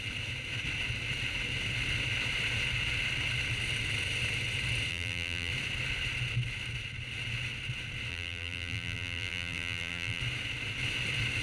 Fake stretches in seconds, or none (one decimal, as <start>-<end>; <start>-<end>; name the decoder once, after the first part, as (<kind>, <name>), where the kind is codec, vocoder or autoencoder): 4.9-5.5 (vocoder, BigVGAN v2); 8.1-10.2